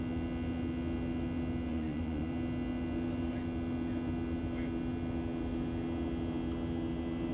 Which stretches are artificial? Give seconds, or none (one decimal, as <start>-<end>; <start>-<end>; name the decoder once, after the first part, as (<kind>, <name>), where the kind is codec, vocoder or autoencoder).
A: 1.7-2.3 (vocoder, Vocos)